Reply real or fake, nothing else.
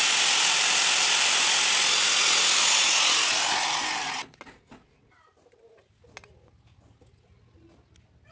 real